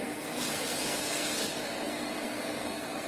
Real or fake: fake